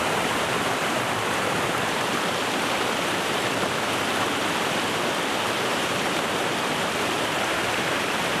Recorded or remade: remade